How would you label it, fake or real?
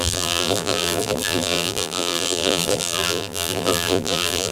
fake